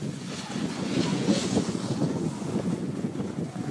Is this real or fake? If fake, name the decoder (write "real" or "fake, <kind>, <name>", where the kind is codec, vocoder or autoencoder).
fake, vocoder, Vocos